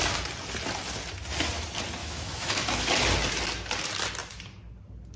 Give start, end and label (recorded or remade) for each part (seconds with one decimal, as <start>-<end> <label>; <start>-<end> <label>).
0.0-2.0 recorded; 2.0-2.9 remade; 2.9-5.2 recorded